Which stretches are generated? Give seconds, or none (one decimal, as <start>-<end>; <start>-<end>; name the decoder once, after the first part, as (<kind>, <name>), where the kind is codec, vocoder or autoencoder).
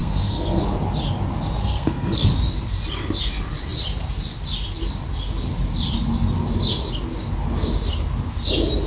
0.0-0.6 (codec, SNAC); 1.6-2.3